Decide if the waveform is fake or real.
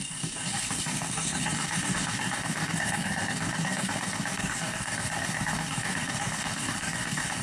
fake